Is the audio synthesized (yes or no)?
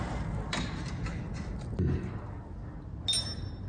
no